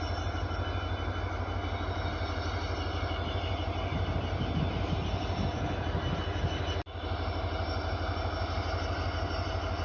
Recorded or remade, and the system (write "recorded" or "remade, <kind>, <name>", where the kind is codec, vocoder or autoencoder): recorded